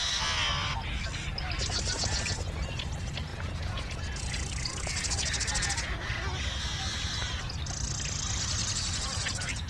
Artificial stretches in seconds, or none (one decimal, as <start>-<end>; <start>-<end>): 3.3-6.1; 8.6-9.7